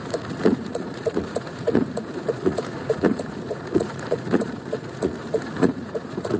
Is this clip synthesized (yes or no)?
yes